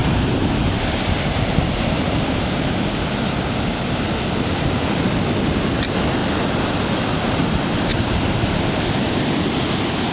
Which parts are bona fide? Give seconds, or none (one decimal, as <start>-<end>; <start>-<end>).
3.0-7.9; 8.6-10.1